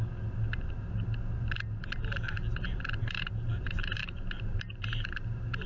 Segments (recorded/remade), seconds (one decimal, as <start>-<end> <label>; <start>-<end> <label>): 0.0-2.1 recorded; 2.1-5.7 remade